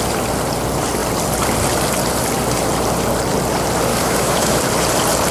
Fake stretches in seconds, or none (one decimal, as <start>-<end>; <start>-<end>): 3.9-4.6